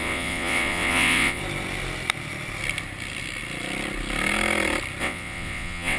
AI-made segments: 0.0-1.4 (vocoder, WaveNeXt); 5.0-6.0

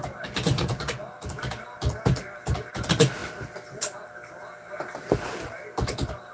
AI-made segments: none

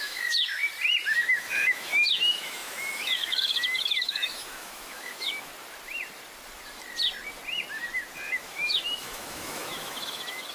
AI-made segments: 0.0-0.6 (autoencoder, DAC-VAE); 1.1-5.5; 8.4-10.5

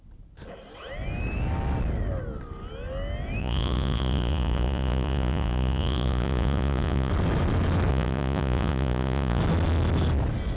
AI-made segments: 3.4-7.1 (vocoder, Vocos); 7.9-9.4

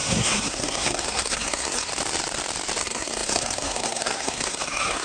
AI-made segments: 0.0-1.9 (codec, SNAC); 2.8-5.0